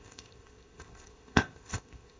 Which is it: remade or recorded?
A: remade